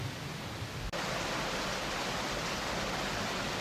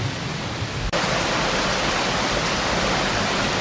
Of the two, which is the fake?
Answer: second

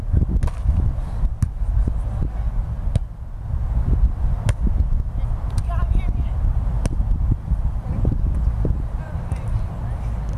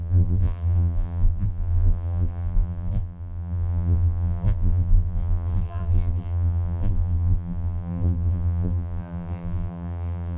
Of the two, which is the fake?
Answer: second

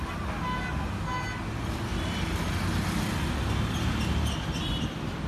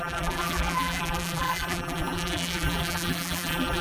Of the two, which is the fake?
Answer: second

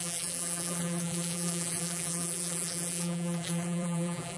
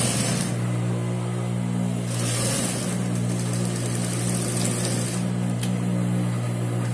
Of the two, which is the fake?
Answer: first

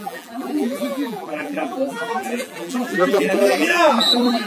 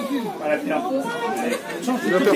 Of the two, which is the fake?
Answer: first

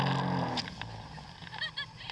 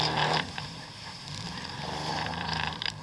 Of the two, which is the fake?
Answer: second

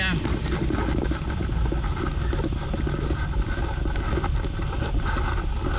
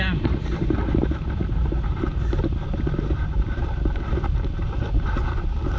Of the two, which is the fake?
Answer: second